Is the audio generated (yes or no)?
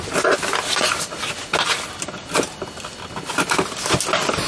no